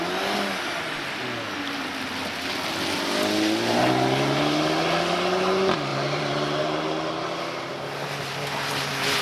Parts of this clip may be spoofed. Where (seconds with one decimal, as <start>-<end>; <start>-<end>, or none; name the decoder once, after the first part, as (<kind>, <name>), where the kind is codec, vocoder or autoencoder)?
5.9-6.8 (vocoder, BigVGAN v2)